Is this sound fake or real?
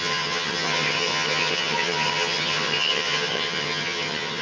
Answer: fake